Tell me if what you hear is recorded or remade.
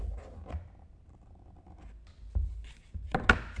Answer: recorded